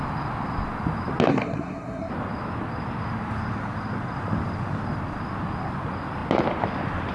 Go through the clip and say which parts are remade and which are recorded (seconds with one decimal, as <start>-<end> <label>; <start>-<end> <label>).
0.0-1.3 recorded; 1.3-2.1 remade; 2.1-7.1 recorded